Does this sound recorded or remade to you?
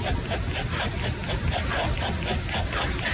recorded